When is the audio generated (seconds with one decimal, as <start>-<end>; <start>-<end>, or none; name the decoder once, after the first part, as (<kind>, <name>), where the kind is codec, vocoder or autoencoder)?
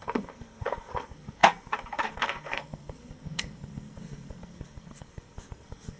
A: 0.0-6.0 (codec, SNAC)